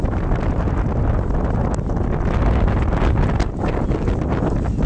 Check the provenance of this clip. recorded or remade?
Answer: recorded